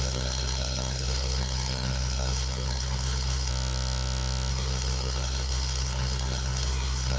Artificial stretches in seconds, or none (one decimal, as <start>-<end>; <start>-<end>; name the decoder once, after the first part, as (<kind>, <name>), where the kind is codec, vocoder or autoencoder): 0.0-3.5 (codec, SNAC); 4.5-7.2